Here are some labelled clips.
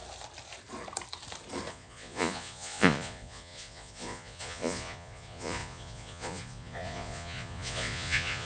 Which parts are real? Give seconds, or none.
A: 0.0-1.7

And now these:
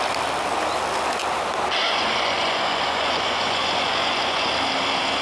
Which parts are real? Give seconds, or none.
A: 0.0-1.8; 4.5-5.2